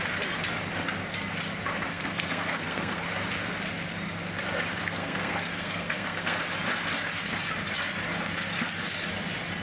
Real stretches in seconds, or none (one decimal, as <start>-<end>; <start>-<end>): 0.0-1.9; 3.0-4.8; 6.4-9.6